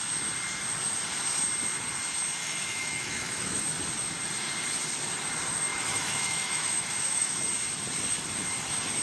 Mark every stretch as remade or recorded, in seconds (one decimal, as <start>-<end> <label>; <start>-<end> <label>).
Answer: 0.0-2.4 recorded; 2.4-3.6 remade; 3.6-5.7 recorded; 5.7-7.4 remade; 7.4-9.0 recorded